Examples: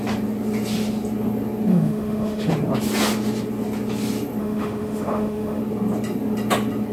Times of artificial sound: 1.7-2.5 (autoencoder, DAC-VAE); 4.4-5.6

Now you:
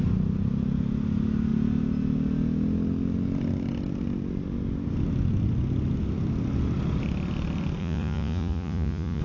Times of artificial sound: 7.8-9.2 (vocoder, Vocos)

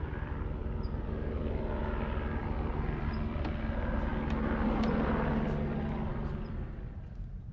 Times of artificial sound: 2.4-3.1 (vocoder, BigVGAN v2); 6.1-7.0

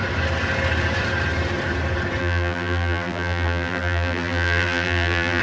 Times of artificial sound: 2.2-5.4 (vocoder, BigVGAN v2)

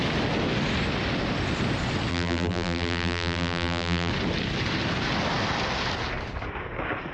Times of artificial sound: 2.1-4.1 (vocoder, BigVGAN v2)